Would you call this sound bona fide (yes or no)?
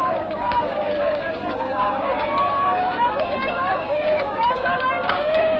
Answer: no